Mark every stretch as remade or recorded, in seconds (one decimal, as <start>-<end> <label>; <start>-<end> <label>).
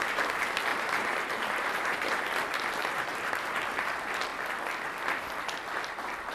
0.0-0.7 recorded; 0.7-2.2 remade; 2.2-2.8 recorded; 2.8-3.5 remade; 3.5-6.3 recorded